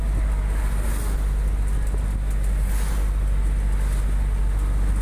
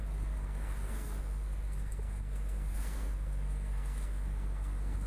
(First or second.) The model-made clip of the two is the second